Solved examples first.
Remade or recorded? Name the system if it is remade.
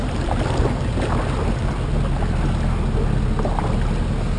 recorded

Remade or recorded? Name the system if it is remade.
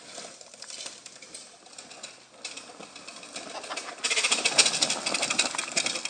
remade, vocoder, BigVGAN v2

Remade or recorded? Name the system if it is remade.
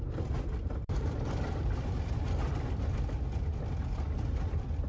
remade, vocoder, BigVGAN v2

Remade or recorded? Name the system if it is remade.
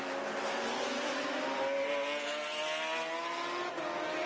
recorded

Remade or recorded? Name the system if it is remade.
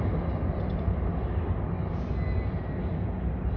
recorded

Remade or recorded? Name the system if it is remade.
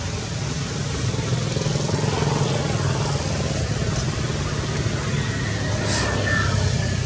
recorded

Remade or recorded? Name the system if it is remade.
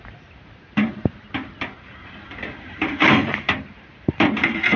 remade, vocoder, BigVGAN v2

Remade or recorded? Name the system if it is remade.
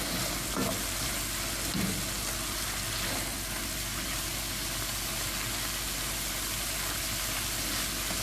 recorded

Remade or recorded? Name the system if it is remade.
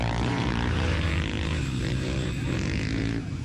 remade, vocoder, BigVGAN v2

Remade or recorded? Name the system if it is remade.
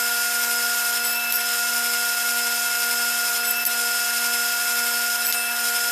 recorded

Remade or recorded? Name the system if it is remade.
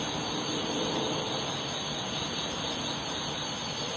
recorded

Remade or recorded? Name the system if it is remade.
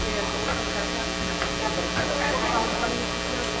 recorded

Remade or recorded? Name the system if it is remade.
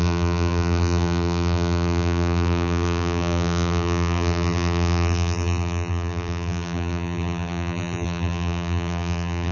remade, vocoder, BigVGAN v2